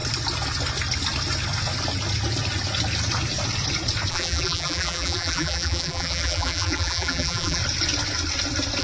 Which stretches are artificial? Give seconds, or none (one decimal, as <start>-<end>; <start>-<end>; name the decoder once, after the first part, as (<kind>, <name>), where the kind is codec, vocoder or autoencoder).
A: 4.1-7.6 (vocoder, BigVGAN v2)